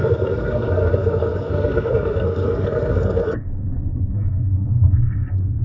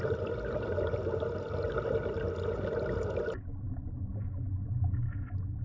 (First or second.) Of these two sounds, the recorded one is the second